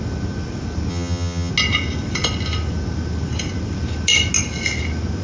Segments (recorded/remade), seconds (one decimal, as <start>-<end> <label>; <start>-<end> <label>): 0.0-0.9 recorded; 0.9-1.5 remade; 1.5-5.2 recorded